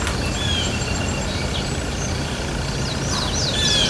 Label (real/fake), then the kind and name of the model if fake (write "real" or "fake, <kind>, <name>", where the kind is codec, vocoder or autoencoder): real